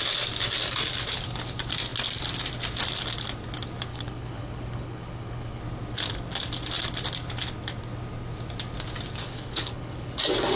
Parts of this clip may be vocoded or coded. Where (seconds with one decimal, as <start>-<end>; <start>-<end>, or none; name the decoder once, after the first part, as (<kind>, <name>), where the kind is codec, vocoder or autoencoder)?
3.9-5.6 (codec, HILCodec); 9.2-10.1